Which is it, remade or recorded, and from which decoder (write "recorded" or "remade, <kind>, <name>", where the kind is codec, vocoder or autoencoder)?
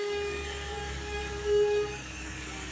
remade, codec, DAC